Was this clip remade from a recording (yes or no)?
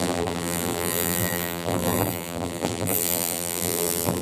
yes